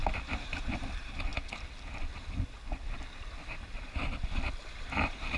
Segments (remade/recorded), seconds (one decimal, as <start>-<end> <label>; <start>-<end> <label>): 0.0-0.6 recorded; 0.6-1.3 remade; 1.3-4.5 recorded; 4.5-5.4 remade